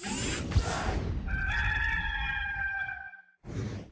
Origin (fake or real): real